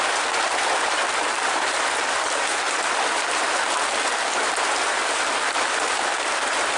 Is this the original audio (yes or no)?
yes